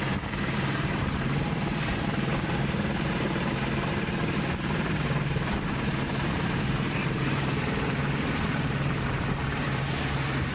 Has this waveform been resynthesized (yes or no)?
yes